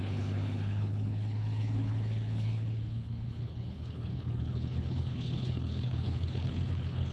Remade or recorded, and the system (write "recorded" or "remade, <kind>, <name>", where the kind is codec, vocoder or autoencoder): remade, codec, HILCodec